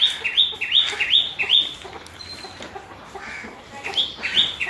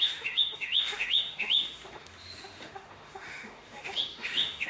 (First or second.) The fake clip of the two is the second